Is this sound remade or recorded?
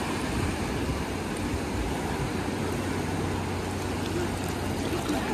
recorded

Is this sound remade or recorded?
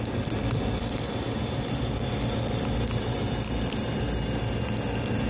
recorded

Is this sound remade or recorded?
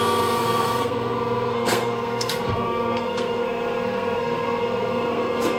remade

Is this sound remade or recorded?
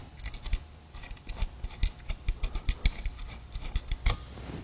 recorded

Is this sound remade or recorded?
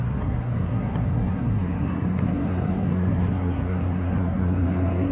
remade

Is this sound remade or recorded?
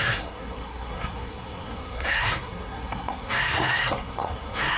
remade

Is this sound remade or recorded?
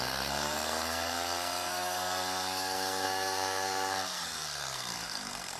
remade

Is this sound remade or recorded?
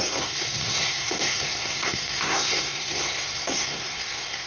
remade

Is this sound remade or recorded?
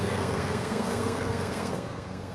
remade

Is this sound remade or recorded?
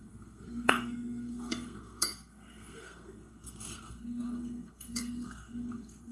remade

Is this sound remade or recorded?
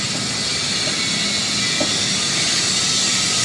recorded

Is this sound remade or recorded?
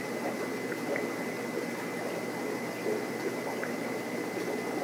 recorded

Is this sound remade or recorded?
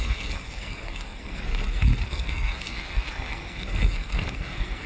remade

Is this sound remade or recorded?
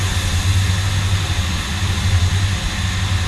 recorded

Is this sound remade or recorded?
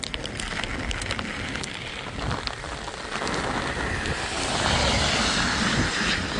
recorded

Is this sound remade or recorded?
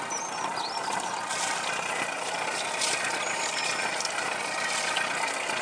recorded